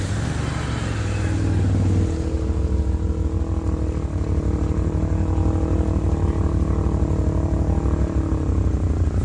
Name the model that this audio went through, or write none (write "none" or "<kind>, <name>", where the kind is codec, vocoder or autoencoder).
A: none